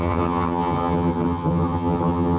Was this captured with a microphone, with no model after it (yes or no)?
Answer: no